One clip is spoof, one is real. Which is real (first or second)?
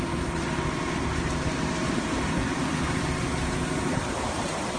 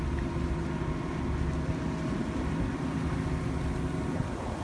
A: second